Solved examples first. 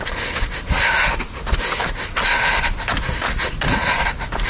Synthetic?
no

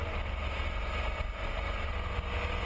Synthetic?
no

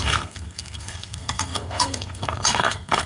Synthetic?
yes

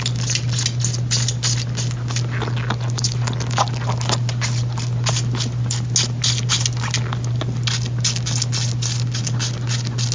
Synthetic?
no